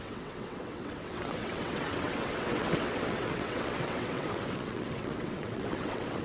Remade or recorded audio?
remade